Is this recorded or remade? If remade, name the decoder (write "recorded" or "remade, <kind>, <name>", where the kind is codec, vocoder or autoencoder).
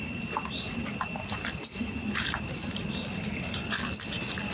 recorded